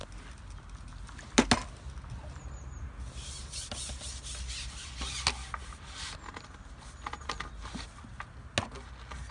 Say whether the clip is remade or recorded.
recorded